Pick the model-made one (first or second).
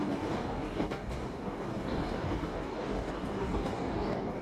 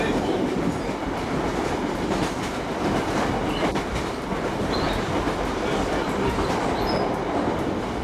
first